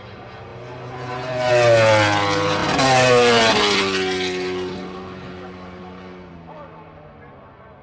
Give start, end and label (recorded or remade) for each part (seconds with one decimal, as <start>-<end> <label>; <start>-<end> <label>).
0.0-7.8 recorded